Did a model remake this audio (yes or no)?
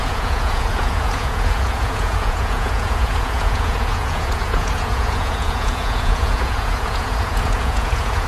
yes